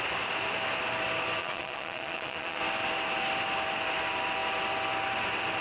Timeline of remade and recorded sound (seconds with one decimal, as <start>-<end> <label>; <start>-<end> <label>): 0.0-1.4 recorded; 1.4-2.6 remade; 2.6-5.6 recorded